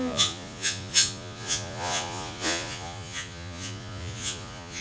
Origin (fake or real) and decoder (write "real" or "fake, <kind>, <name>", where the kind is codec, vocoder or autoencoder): fake, vocoder, Vocos